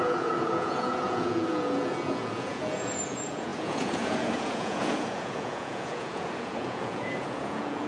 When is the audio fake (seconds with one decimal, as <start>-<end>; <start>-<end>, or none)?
0.0-7.9

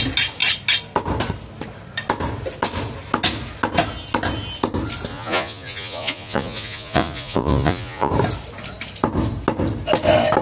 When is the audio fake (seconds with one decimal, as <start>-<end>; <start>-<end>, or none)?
5.1-8.1

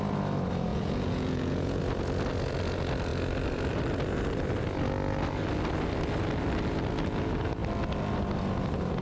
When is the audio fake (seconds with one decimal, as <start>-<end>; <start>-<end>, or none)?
0.7-1.8

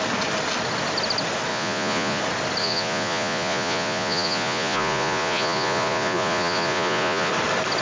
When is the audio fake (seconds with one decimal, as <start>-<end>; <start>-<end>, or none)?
1.5-2.2; 2.6-7.3

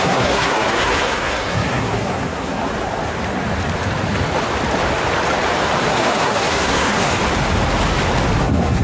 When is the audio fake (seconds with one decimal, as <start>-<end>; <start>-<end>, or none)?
0.0-2.6; 5.9-7.1; 8.4-8.8

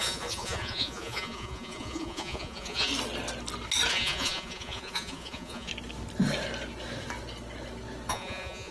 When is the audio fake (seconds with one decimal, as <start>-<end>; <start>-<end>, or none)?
0.0-2.9; 3.9-5.7; 8.1-8.7